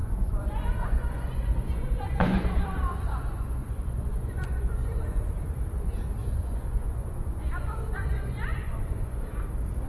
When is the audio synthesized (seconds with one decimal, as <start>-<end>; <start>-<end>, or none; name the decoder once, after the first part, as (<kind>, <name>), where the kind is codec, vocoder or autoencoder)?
0.0-2.5 (vocoder, Vocos); 3.1-5.2; 6.2-9.2